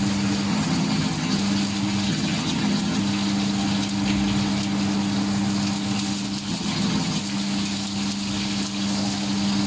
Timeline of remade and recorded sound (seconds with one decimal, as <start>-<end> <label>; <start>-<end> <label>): 0.0-0.5 recorded; 0.5-1.4 remade; 1.4-2.1 recorded; 2.1-3.0 remade; 3.0-6.5 recorded; 6.5-7.2 remade; 7.2-9.7 recorded